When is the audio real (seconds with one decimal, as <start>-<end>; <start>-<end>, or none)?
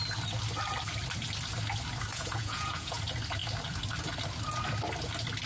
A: 0.0-2.1; 3.0-5.5